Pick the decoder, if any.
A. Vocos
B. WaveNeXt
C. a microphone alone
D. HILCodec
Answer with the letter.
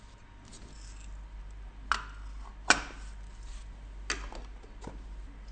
C